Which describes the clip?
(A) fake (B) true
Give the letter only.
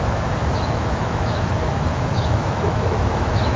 A